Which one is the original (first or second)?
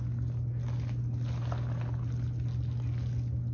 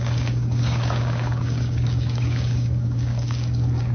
first